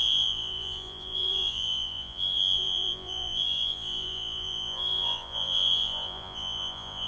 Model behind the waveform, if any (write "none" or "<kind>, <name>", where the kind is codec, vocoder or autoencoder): vocoder, Vocos